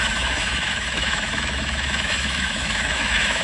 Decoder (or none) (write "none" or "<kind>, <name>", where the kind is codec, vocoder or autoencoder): autoencoder, DAC-VAE